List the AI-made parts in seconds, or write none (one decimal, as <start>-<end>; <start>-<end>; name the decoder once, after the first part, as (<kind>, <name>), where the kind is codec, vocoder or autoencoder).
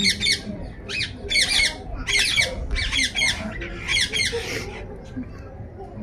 3.9-4.5 (vocoder, BigVGAN v2)